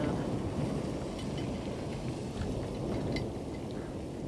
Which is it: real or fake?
real